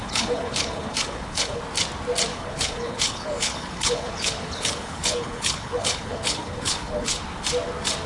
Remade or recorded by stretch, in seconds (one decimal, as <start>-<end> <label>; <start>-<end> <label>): 0.0-1.6 remade; 1.6-2.3 recorded; 2.3-7.2 remade; 7.2-8.1 recorded